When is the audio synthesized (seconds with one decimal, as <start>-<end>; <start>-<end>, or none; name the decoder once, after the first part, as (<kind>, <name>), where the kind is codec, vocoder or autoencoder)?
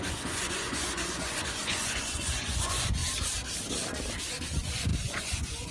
0.0-3.0 (vocoder, Vocos); 4.3-5.7